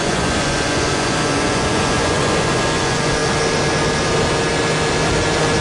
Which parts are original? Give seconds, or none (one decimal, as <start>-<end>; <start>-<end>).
3.2-5.6